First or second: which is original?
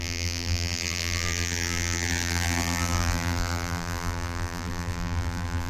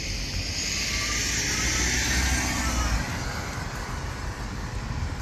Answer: second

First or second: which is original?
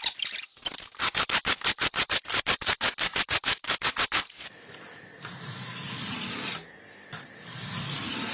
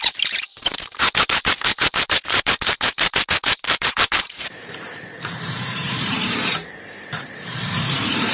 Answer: first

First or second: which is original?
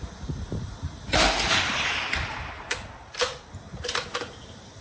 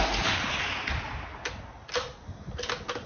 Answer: second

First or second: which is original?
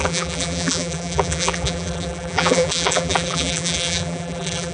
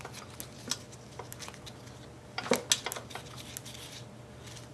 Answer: second